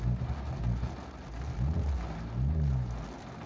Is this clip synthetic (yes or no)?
no